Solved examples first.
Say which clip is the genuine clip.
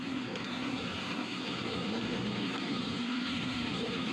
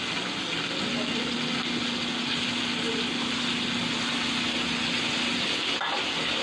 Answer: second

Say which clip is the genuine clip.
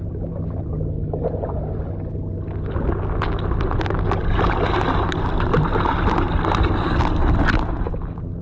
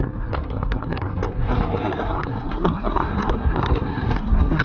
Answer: first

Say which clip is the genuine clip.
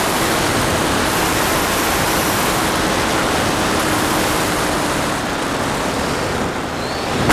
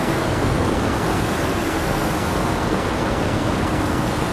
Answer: first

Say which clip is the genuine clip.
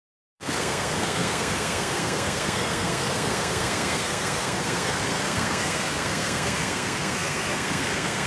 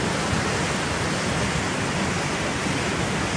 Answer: second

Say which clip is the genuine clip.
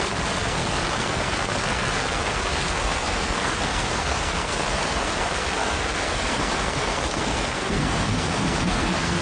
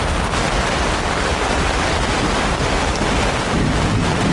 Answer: second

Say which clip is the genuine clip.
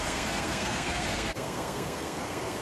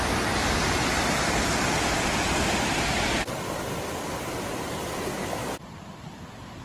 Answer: second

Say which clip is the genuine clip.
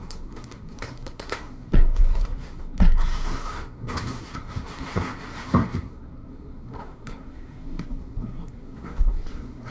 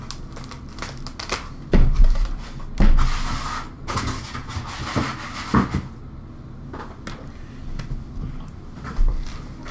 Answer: second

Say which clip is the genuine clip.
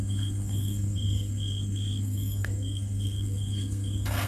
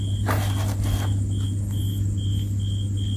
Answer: second